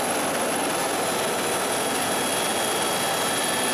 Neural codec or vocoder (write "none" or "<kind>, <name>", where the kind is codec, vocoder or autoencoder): none